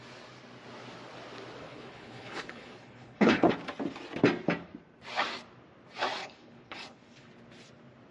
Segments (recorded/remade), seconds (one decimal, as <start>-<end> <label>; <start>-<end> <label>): 0.0-1.6 recorded; 1.6-3.5 remade; 3.5-6.2 recorded; 6.2-7.3 remade; 7.3-8.1 recorded